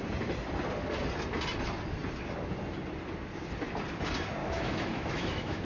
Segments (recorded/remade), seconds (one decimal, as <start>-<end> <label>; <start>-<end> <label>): 0.0-4.4 recorded; 4.4-5.6 remade